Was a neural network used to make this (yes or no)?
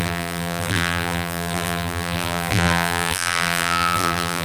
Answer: yes